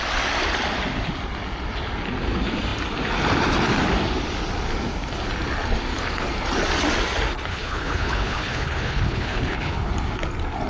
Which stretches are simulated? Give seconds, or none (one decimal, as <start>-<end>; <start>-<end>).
7.5-9.9